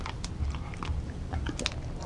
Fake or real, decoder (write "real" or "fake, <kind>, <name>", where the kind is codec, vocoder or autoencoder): real